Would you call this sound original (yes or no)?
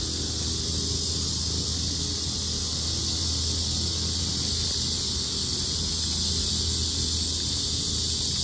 yes